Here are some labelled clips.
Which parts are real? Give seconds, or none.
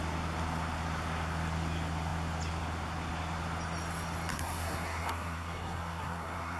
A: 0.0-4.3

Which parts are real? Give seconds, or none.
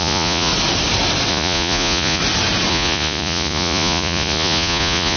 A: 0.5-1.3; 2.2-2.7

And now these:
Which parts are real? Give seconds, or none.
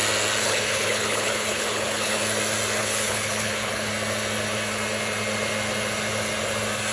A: 0.0-0.4; 2.2-2.8; 3.9-6.9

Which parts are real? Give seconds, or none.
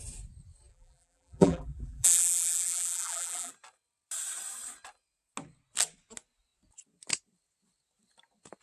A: 0.0-0.7; 3.5-8.6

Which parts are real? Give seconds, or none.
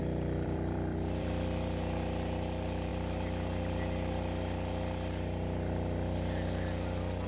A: 2.9-7.3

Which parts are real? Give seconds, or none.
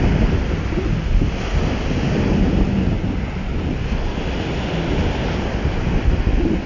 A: 0.0-3.5; 4.2-6.7